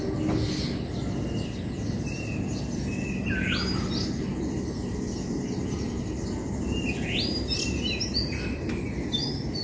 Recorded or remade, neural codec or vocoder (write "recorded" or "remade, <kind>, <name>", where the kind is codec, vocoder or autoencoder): recorded